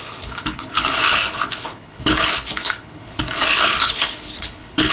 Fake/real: fake